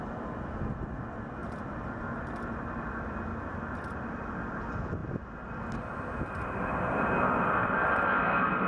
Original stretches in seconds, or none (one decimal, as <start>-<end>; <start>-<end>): 0.0-1.4; 2.6-8.7